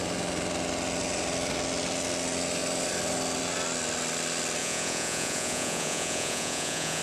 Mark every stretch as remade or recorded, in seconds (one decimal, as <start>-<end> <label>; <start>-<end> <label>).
0.0-4.6 recorded; 4.6-7.0 remade